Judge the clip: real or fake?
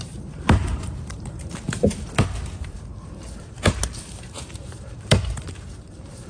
fake